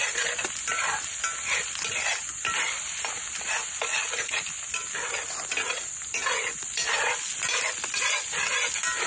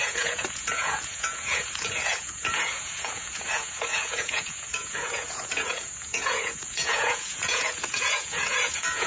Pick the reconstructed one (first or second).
second